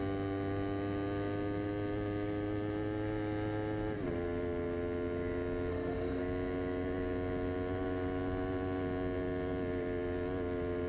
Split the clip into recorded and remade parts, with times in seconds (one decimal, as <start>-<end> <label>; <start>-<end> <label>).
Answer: 0.0-5.7 recorded; 5.7-6.2 remade; 6.2-10.9 recorded